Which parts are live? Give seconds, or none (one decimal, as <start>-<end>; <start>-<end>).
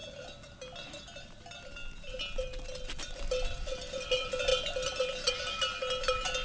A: 0.0-6.4